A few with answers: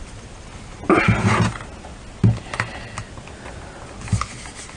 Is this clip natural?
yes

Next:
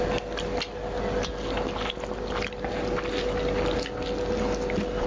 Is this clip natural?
yes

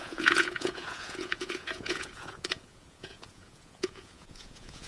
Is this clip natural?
no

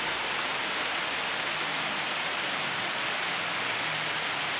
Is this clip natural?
yes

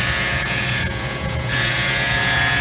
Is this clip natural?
no